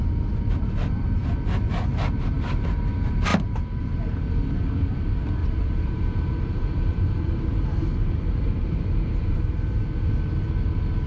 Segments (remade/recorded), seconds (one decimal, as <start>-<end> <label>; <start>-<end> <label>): 0.0-3.3 recorded; 3.3-3.9 remade; 3.9-5.4 recorded; 5.4-9.5 remade; 9.5-11.1 recorded